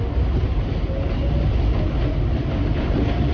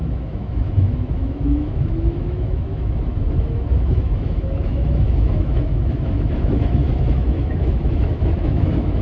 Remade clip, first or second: second